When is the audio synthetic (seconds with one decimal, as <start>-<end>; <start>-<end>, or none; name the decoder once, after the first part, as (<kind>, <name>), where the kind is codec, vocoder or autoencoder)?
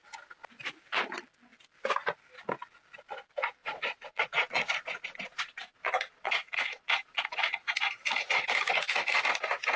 3.6-7.6 (vocoder, Vocos)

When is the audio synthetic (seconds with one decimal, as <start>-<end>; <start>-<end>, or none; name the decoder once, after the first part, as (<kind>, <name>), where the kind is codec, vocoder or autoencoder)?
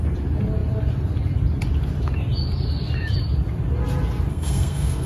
4.3-5.1 (codec, SNAC)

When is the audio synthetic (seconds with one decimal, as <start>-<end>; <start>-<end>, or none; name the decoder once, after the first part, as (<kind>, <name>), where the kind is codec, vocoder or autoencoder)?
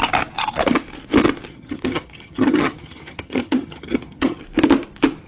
1.5-4.4 (vocoder, HiFi-GAN)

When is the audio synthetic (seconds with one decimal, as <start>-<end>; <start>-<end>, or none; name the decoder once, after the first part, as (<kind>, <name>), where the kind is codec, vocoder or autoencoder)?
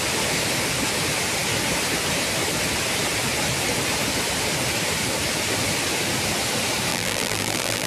6.9-7.9 (vocoder, BigVGAN v2)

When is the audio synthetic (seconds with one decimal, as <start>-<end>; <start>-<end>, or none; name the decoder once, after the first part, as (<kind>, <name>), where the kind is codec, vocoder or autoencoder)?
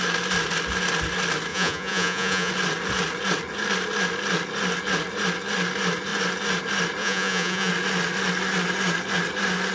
1.5-2.5 (vocoder, Vocos); 7.0-7.7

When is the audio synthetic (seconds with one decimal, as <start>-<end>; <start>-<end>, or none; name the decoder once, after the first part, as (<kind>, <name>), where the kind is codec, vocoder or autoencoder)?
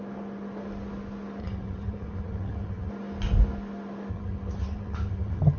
1.4-2.9 (vocoder, HiFi-GAN); 4.1-5.6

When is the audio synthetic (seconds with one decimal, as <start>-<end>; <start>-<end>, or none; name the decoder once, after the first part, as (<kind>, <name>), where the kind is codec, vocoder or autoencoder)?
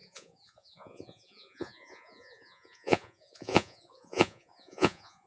0.0-5.3 (vocoder, Vocos)